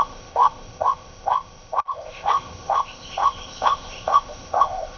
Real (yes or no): no